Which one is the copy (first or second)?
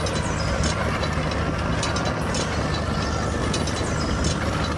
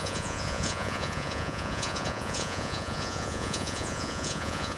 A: second